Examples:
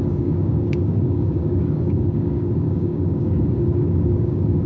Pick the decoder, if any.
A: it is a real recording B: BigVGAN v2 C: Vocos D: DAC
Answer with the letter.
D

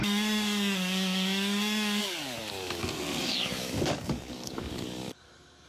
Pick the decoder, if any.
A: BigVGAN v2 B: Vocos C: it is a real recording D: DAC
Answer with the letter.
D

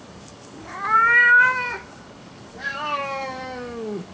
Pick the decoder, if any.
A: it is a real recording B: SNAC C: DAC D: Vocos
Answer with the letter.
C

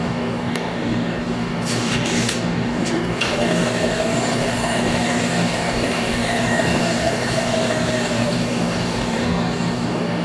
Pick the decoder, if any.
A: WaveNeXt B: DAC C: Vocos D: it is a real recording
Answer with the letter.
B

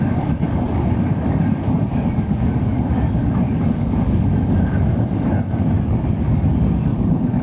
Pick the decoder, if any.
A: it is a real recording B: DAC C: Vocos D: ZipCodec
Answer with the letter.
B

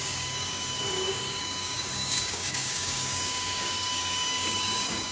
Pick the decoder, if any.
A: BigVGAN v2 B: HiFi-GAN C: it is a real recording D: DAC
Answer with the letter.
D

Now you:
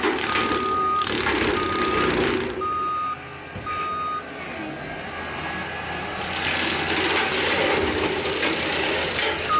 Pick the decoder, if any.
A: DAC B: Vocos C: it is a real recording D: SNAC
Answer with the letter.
C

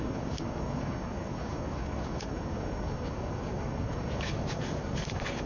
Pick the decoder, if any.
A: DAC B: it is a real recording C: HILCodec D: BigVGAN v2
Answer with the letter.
A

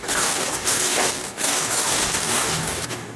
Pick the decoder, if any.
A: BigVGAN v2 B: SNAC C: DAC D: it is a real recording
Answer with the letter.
C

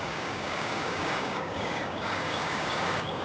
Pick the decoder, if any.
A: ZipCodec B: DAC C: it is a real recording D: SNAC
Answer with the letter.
B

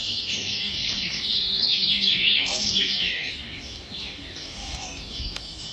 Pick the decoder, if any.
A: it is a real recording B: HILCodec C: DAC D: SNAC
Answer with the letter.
C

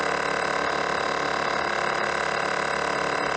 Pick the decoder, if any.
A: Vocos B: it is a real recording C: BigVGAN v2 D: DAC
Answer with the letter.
B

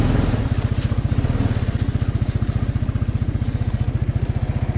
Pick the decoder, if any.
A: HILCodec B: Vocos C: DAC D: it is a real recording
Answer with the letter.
D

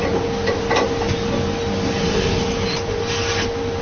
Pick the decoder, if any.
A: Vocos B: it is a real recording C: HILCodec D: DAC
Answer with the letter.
B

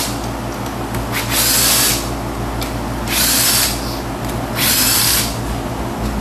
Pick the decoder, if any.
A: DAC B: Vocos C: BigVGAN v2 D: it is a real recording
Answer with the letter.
D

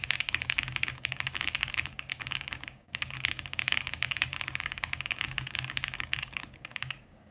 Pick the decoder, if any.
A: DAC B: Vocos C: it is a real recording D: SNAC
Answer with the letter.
A